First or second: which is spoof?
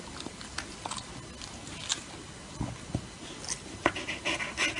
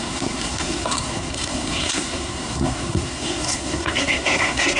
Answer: second